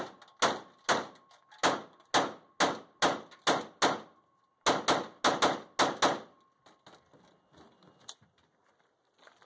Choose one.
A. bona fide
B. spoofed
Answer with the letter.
A